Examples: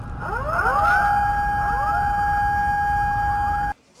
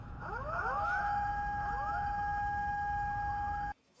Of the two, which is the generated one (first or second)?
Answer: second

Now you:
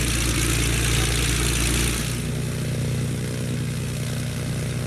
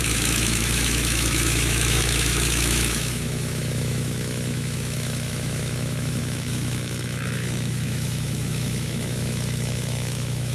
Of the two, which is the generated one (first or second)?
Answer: second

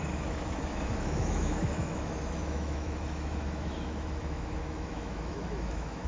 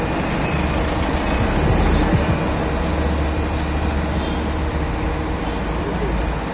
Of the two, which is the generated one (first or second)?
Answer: first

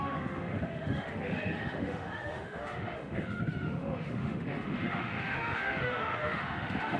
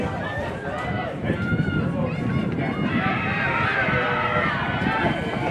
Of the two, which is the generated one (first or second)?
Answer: first